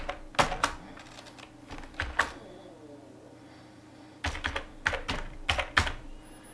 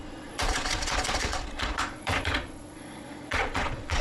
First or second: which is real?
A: first